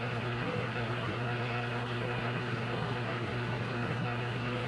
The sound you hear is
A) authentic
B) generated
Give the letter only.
B